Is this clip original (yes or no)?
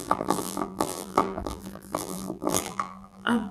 no